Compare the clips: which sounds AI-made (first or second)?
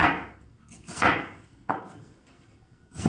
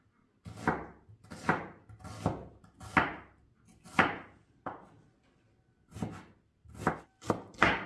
first